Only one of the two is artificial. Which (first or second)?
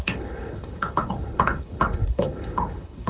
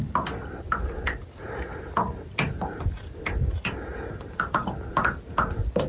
first